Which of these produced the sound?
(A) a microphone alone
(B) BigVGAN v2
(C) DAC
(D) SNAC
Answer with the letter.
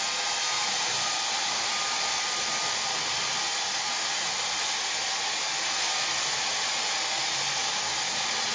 A